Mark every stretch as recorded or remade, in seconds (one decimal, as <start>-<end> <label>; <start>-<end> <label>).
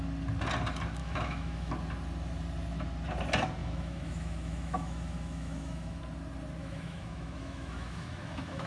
0.0-1.0 recorded; 1.0-1.7 remade; 1.7-3.6 recorded; 3.6-6.0 remade; 6.0-6.6 recorded; 6.6-8.7 remade